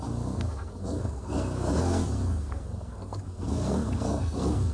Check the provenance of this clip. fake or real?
fake